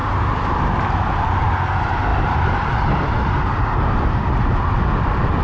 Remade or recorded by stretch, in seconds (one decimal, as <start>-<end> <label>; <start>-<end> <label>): 0.0-2.1 recorded; 2.1-3.3 remade; 3.3-5.4 recorded